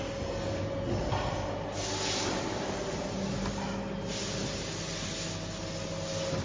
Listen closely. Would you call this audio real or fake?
real